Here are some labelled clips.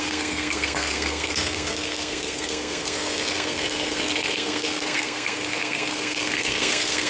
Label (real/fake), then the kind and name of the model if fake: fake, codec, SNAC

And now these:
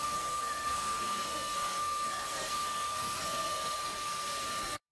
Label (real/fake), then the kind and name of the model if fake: fake, codec, SNAC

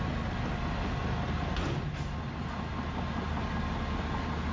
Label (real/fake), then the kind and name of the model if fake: real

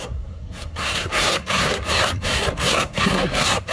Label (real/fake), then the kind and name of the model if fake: fake, codec, SNAC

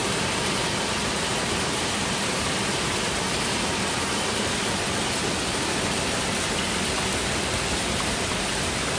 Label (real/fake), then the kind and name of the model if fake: real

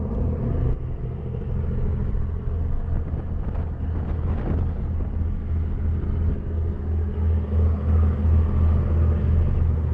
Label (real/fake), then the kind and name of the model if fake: real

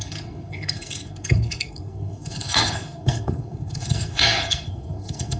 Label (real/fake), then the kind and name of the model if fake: fake, codec, SNAC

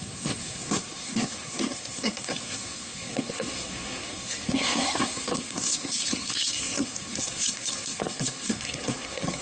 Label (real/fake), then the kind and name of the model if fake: fake, codec, SNAC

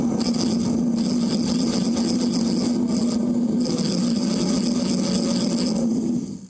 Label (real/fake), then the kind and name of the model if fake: real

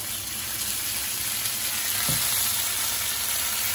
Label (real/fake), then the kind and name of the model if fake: real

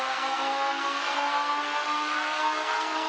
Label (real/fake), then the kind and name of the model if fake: fake, codec, SNAC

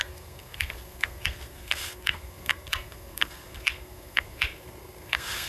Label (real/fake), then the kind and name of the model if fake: fake, codec, SNAC